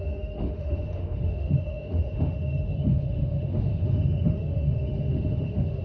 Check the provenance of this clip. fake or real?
fake